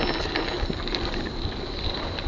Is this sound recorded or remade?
recorded